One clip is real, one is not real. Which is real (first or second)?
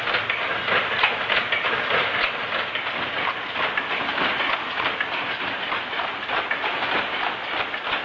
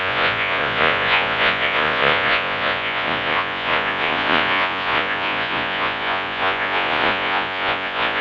first